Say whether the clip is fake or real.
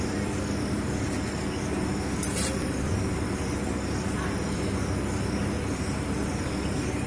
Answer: real